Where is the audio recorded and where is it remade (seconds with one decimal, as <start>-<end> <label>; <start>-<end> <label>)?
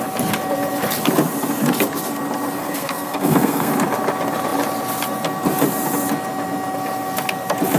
0.0-2.6 recorded; 2.6-3.7 remade; 3.7-7.8 recorded